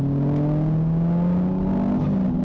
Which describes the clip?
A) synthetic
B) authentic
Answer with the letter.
B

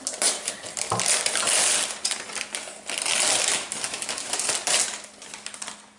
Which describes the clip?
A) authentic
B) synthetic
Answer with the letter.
A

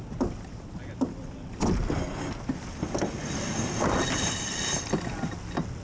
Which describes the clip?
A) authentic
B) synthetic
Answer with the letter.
A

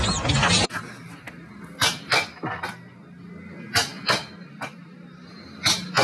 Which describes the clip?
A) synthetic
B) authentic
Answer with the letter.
B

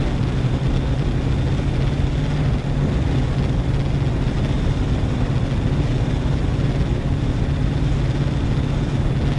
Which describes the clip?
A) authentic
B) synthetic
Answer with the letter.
A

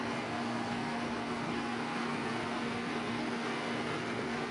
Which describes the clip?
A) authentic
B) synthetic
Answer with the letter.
B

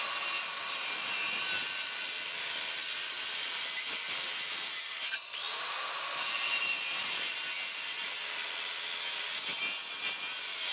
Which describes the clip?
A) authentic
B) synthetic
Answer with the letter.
A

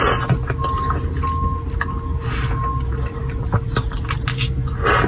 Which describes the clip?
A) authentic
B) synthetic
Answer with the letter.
A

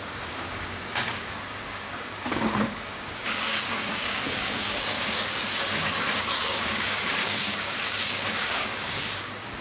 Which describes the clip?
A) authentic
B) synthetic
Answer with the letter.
B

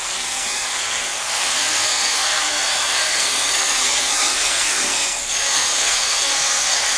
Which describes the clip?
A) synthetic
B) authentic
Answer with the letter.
A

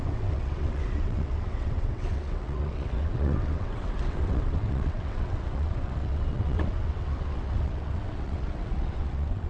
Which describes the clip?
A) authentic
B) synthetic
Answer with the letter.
B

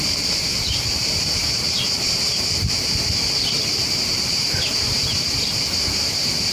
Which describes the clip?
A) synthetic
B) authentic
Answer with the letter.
A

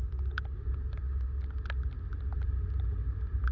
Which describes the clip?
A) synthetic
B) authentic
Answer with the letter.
B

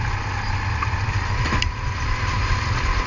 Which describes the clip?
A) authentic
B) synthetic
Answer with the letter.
A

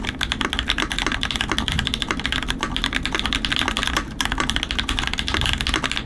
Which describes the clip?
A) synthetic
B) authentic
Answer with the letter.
B